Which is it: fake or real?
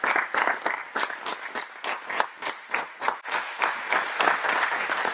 real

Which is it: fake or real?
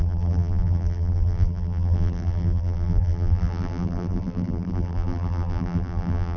fake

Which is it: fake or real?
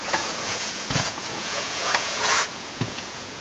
fake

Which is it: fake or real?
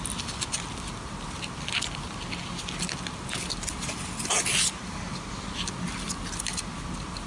real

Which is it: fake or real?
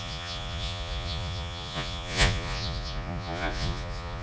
fake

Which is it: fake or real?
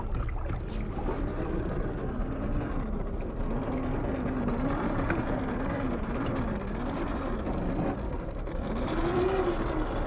real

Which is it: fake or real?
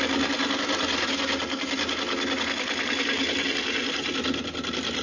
real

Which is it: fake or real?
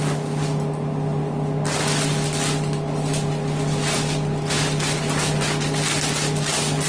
real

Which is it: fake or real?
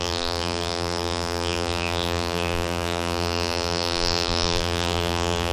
fake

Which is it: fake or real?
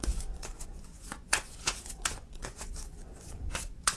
fake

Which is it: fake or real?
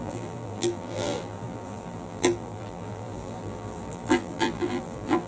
fake